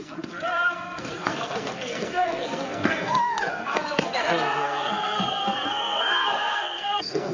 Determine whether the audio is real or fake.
fake